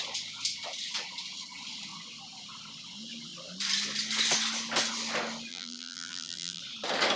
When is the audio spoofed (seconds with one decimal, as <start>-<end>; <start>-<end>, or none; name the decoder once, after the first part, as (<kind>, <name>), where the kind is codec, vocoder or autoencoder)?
5.5-6.6 (vocoder, BigVGAN v2)